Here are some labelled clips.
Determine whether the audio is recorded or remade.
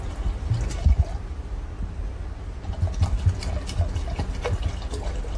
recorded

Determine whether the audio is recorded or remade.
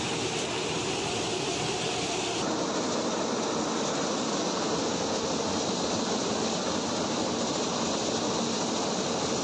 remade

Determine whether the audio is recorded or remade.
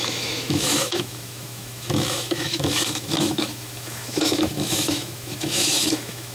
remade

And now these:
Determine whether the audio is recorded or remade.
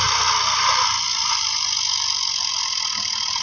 recorded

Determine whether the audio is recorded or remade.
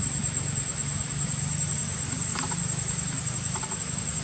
recorded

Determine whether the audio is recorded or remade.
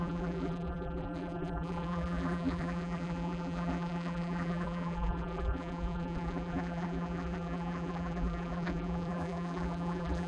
remade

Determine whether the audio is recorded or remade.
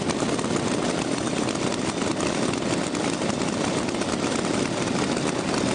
recorded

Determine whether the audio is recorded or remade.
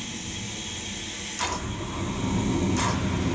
recorded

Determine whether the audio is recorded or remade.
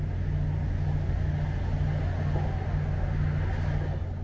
recorded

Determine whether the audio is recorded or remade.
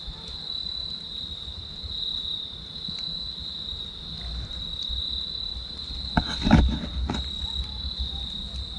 recorded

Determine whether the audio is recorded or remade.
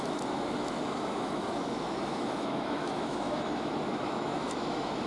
remade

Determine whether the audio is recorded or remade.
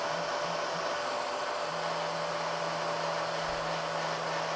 recorded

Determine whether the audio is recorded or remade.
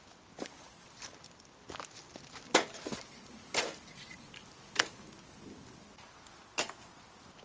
recorded